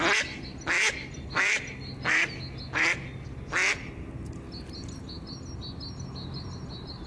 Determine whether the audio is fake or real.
real